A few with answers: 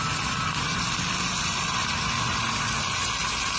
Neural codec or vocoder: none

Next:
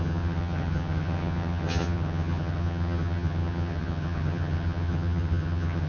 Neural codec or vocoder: vocoder, HiFi-GAN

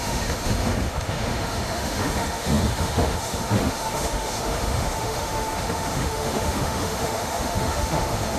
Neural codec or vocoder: autoencoder, DAC-VAE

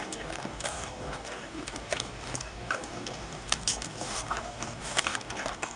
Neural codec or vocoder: codec, DAC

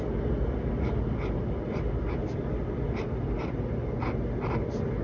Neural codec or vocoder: none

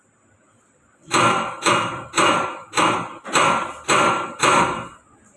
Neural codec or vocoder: vocoder, BigVGAN v2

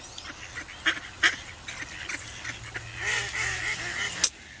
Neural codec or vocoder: none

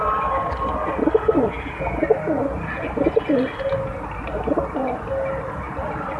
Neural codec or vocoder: none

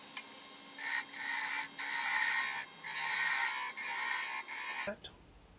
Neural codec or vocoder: none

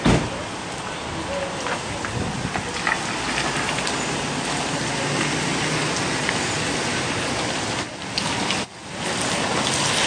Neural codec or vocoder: none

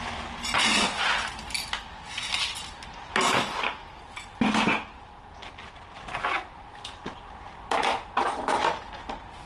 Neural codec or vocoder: none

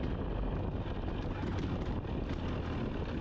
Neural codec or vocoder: none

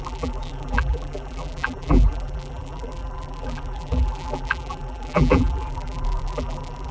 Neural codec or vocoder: vocoder, BigVGAN v2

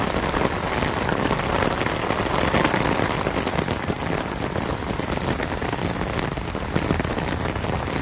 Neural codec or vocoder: none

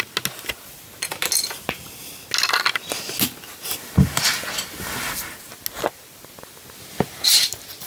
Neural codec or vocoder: none